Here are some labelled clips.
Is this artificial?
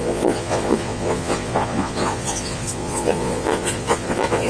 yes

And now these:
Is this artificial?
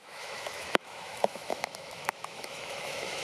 yes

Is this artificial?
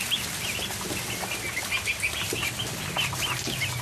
no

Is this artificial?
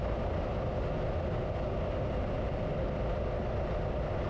no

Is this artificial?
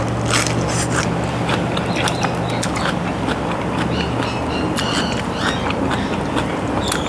no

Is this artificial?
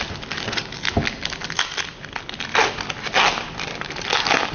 no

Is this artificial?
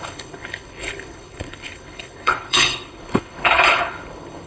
yes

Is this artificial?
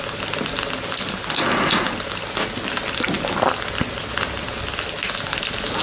no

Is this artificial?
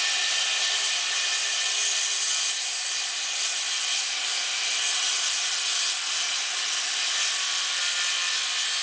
no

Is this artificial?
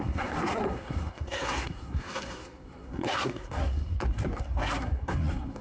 yes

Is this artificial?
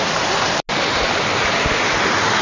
no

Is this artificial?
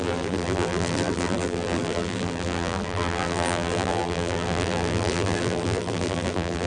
yes